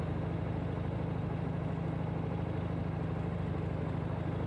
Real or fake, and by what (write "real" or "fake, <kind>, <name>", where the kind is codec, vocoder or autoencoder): real